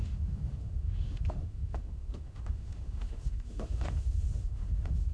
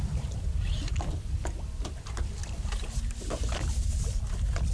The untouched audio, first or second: second